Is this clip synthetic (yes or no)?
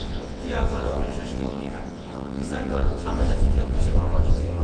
yes